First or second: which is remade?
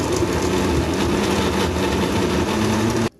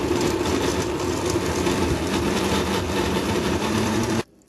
second